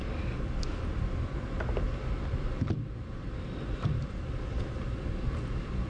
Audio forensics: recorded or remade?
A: recorded